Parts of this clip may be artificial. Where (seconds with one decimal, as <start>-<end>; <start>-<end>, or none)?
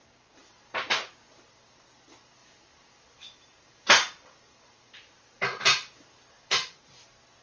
0.4-1.1; 2.4-6.8